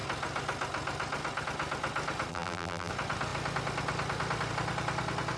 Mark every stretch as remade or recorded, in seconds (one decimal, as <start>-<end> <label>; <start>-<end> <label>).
0.0-2.3 recorded; 2.3-2.9 remade; 2.9-5.4 recorded